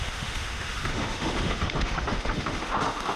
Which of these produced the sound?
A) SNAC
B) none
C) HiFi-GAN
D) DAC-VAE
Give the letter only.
D